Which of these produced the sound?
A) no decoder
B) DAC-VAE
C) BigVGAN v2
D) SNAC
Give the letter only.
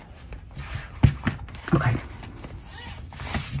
A